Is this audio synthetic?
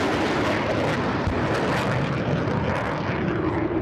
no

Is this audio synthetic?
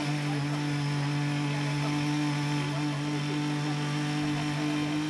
no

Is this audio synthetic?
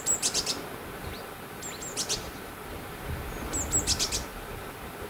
no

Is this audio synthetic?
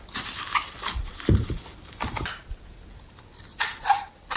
yes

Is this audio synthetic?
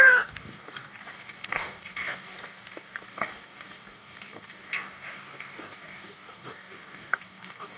yes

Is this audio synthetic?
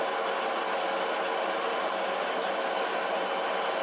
no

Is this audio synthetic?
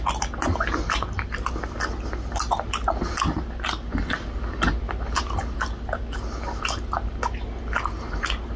no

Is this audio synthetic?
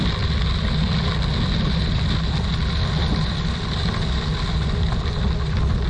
no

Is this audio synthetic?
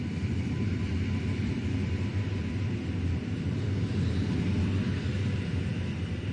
no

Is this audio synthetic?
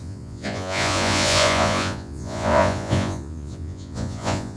yes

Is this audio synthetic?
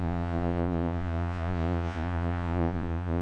yes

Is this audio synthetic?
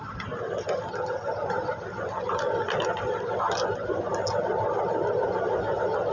no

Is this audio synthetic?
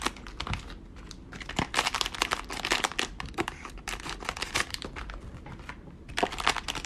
yes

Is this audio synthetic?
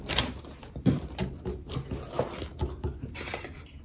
no